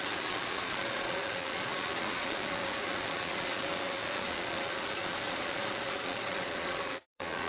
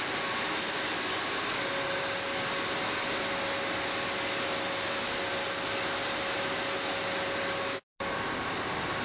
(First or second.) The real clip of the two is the second